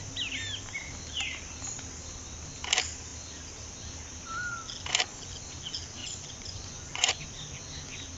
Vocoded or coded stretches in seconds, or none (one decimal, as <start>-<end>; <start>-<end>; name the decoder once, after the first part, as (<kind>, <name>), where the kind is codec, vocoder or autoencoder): 6.0-7.2 (vocoder, Vocos)